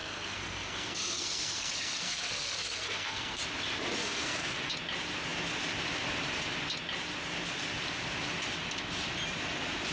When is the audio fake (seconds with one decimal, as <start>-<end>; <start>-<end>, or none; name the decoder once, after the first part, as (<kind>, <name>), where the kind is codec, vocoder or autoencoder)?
0.0-3.4 (codec, SNAC); 4.0-4.7